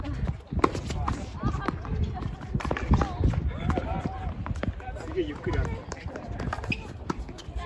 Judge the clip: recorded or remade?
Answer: recorded